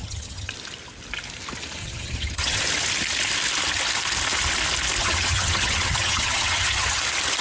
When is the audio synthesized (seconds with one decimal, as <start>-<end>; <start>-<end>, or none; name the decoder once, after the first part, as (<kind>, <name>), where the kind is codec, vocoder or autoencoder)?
0.0-0.5 (vocoder, HiFi-GAN); 1.8-2.6; 5.0-7.0